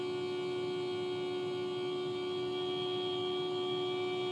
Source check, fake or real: real